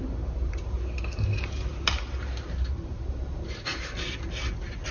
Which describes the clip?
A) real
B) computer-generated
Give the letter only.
A